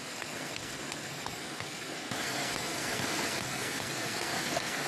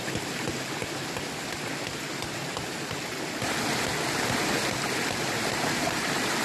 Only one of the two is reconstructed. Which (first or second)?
first